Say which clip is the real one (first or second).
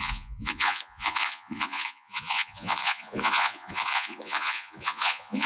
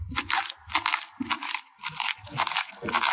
second